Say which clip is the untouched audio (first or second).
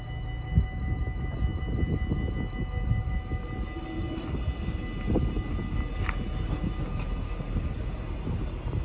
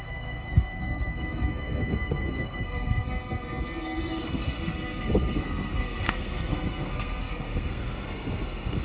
first